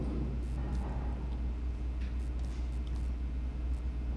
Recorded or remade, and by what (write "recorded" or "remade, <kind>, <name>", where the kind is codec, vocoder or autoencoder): recorded